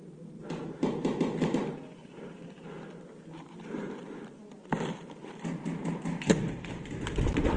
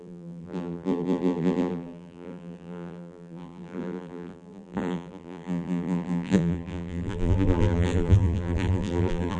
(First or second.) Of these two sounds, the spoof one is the second